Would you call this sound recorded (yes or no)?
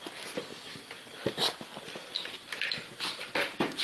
yes